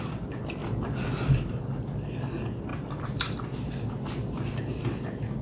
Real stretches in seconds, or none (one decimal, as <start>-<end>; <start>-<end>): 0.0-2.7; 3.7-5.4